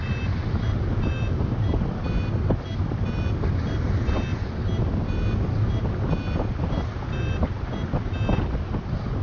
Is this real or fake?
real